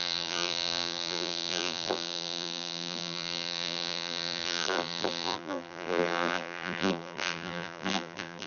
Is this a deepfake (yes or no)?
yes